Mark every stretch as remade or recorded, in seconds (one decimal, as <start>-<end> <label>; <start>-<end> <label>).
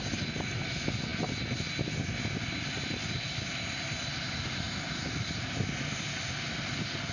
0.0-7.1 recorded